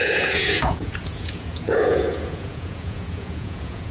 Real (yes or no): no